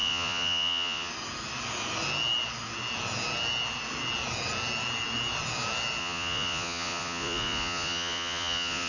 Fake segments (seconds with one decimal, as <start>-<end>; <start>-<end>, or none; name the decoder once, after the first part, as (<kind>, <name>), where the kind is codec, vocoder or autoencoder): 0.0-1.1 (vocoder, Vocos); 6.0-8.9